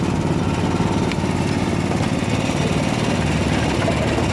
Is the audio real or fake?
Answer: real